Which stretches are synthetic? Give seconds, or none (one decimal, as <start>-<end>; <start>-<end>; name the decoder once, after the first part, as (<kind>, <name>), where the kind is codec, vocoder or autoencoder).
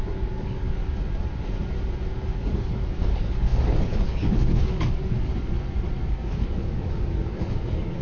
0.0-0.8 (codec, DAC); 2.4-5.3; 6.1-8.0